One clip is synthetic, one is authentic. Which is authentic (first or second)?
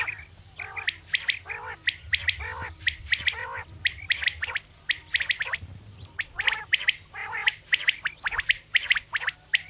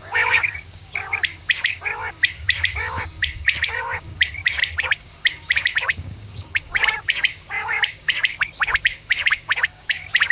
first